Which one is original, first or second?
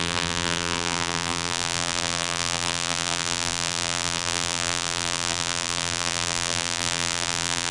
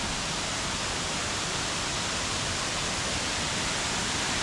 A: second